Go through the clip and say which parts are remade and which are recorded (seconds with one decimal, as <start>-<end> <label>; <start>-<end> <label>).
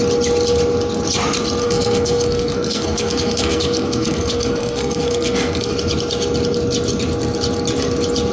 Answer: 0.0-1.6 recorded; 1.6-5.7 remade; 5.7-8.3 recorded